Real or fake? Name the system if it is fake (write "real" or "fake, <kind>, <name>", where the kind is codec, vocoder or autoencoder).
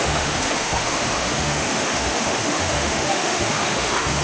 fake, autoencoder, DAC-VAE